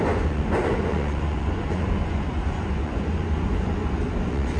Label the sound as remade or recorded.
remade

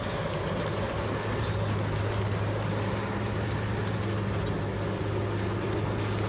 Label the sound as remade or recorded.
recorded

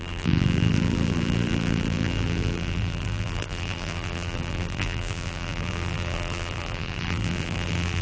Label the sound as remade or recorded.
remade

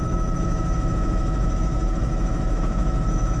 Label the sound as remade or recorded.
remade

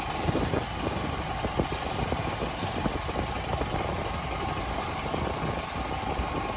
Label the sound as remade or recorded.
remade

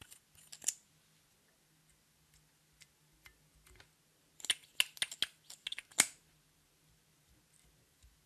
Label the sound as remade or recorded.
recorded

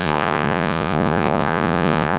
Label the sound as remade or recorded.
remade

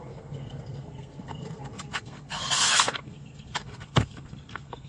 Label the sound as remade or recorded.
remade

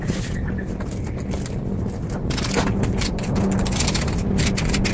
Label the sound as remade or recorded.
recorded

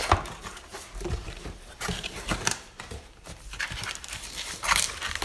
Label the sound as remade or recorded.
remade